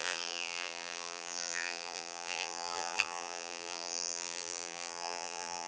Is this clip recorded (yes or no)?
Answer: no